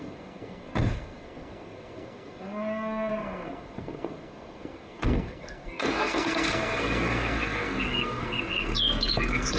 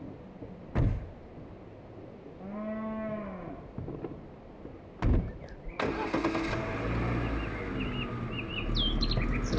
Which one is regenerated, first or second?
first